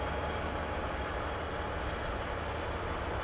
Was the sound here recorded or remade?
recorded